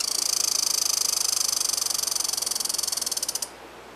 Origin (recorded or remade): recorded